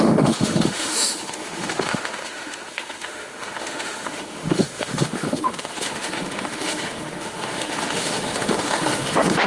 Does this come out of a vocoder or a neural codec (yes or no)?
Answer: yes